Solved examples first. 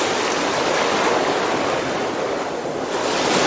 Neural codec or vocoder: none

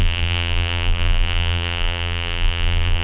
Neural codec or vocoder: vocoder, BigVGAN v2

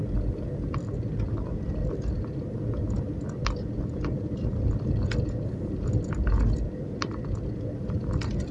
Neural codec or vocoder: none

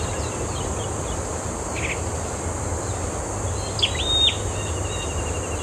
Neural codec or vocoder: none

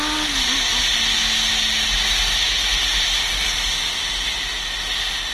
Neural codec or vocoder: none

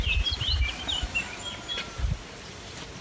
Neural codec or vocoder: vocoder, BigVGAN v2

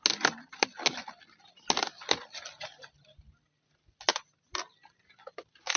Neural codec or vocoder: none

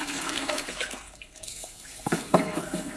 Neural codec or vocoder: codec, SNAC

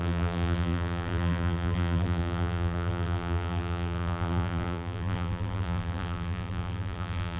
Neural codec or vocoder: vocoder, BigVGAN v2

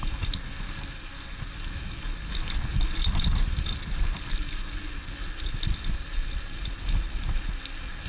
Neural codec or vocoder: none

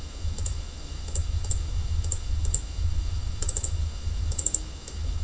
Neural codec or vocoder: autoencoder, DAC-VAE